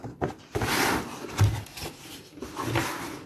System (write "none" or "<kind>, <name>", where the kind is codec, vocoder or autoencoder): none